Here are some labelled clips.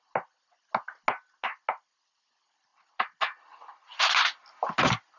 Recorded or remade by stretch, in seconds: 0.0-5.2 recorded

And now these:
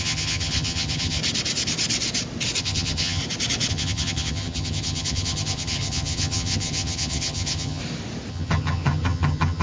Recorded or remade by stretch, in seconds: 0.0-1.2 remade; 1.2-2.6 recorded; 2.6-3.2 remade; 3.2-3.7 recorded; 3.7-7.8 remade; 7.8-8.3 recorded; 8.3-9.6 remade

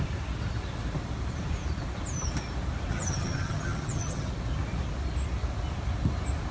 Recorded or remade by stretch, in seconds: 0.0-2.9 recorded; 2.9-4.3 remade; 4.3-6.5 recorded

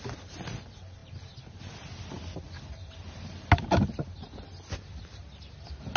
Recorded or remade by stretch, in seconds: 0.0-6.0 recorded

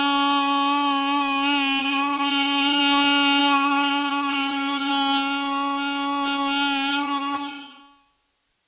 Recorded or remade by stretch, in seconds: 0.0-1.8 recorded; 1.8-2.8 remade; 2.8-3.4 recorded; 3.4-4.9 remade; 4.9-6.9 recorded; 6.9-7.8 remade; 7.8-8.7 recorded